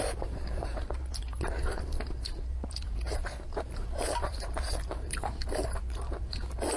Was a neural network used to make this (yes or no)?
yes